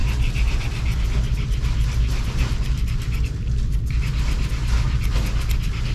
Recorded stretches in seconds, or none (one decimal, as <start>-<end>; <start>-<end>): 0.0-5.9